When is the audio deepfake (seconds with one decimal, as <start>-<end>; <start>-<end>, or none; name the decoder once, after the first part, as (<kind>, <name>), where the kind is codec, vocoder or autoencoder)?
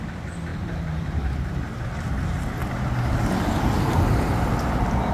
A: 0.5-1.8 (vocoder, BigVGAN v2)